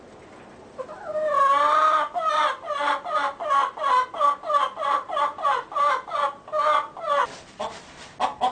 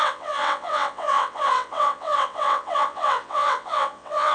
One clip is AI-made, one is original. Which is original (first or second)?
first